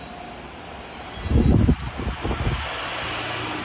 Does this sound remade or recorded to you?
recorded